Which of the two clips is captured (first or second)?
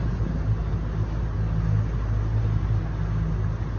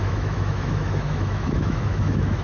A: first